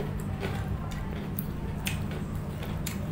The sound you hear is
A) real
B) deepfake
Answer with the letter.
B